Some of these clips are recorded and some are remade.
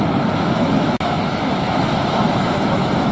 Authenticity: remade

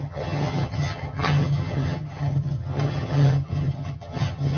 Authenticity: remade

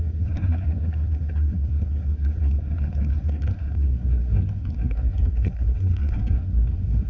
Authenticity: remade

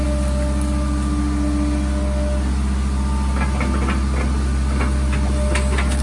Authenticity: recorded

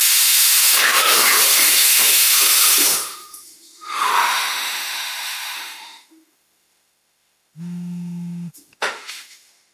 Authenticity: remade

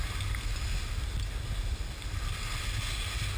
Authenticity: recorded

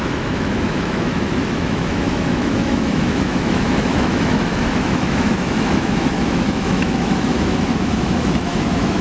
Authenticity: remade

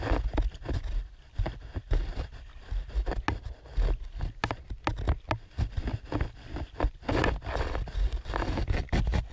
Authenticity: recorded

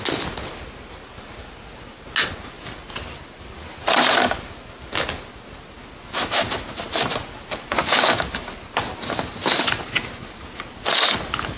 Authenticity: recorded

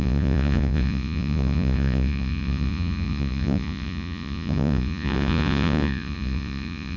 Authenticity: remade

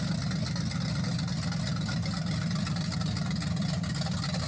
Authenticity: recorded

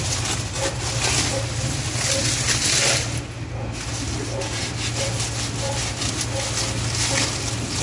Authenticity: recorded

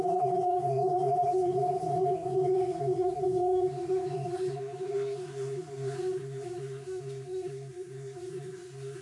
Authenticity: remade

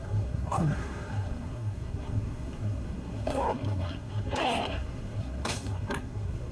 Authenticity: remade